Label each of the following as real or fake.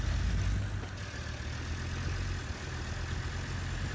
real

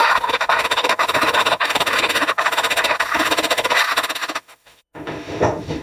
fake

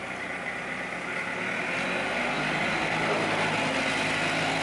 real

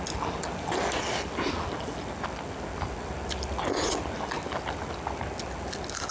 real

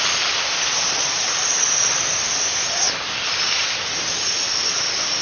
real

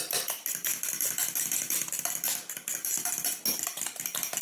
real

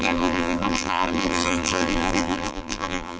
fake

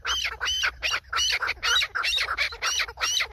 real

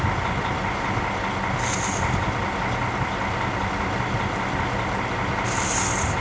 real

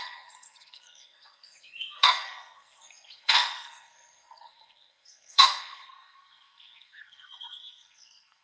fake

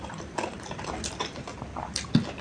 real